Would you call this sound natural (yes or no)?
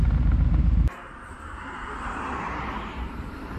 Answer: no